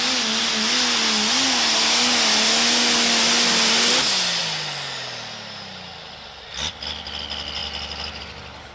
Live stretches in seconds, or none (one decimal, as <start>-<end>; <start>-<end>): 0.0-8.7